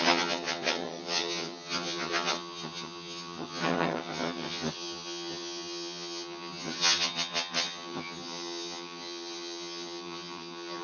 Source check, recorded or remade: remade